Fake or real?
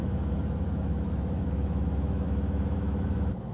fake